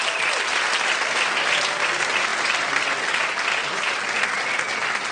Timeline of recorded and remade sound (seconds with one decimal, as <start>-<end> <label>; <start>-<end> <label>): 0.0-5.1 recorded